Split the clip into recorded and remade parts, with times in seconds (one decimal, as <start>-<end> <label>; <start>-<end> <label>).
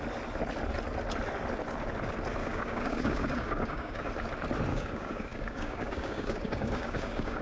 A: 0.0-2.4 recorded; 2.4-4.1 remade; 4.1-4.7 recorded; 4.7-7.4 remade